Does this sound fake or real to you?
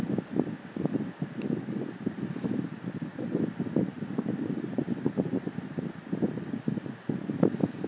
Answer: real